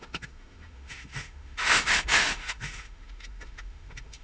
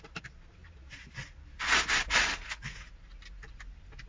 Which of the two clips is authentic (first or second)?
second